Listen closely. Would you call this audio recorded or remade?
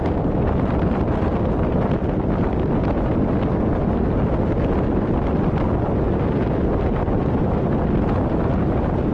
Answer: recorded